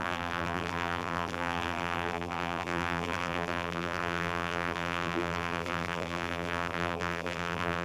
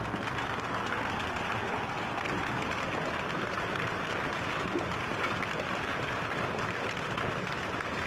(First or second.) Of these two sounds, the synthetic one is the first